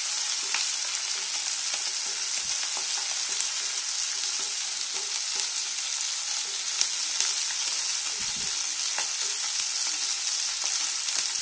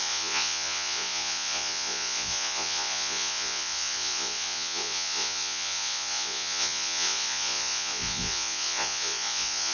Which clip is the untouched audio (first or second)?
first